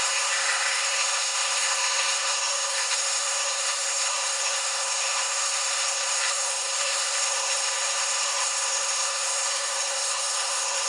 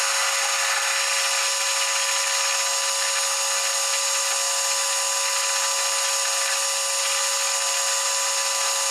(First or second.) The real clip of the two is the second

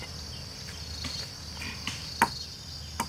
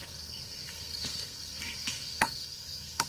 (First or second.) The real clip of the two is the first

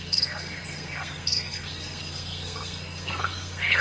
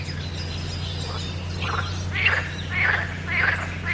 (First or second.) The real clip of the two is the second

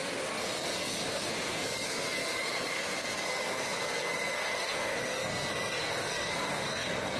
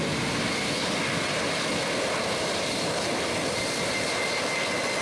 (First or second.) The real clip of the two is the second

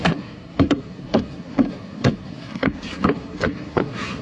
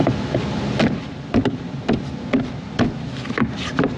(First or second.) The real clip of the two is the second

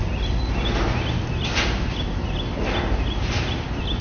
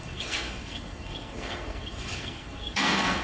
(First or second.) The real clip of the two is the first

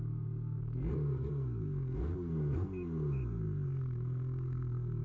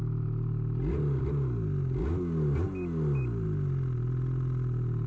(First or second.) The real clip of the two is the second